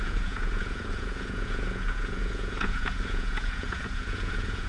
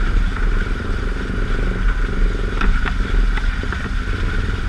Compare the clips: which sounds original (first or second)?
second